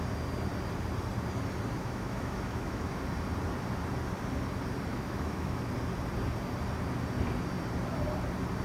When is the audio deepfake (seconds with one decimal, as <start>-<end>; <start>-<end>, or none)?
1.8-3.0; 4.9-5.7